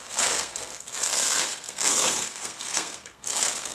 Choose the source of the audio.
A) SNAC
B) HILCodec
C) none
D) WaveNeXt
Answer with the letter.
A